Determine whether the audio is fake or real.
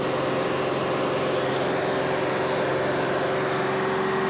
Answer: real